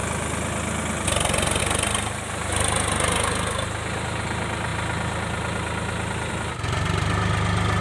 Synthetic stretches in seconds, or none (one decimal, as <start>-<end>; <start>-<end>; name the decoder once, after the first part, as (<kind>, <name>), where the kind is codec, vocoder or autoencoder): none

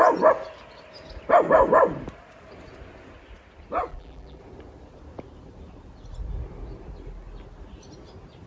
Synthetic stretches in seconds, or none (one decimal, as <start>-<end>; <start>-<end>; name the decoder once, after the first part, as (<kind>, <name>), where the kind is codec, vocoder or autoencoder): 3.9-4.4 (vocoder, BigVGAN v2)

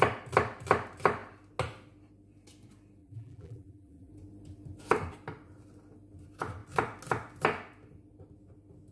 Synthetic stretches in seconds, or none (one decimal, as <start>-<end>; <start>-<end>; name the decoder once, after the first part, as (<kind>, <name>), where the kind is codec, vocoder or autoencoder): 3.0-4.1 (vocoder, BigVGAN v2)

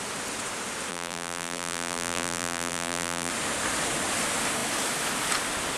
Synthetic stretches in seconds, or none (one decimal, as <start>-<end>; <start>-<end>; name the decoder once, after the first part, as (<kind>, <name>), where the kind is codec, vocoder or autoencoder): 0.9-3.3 (vocoder, BigVGAN v2)

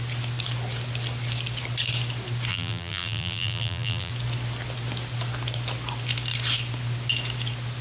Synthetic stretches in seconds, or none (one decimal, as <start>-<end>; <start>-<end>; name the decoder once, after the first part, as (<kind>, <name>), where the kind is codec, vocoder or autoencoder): 2.5-4.1 (vocoder, BigVGAN v2)

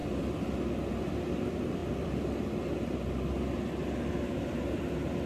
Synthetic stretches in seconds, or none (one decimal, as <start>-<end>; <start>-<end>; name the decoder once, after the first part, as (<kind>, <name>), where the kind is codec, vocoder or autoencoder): 0.0-1.8 (vocoder, BigVGAN v2)